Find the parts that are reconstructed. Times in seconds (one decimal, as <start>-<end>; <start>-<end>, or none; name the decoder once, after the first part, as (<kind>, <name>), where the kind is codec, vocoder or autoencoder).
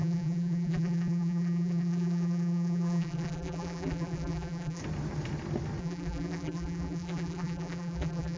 0.0-4.8 (vocoder, BigVGAN v2); 5.8-8.4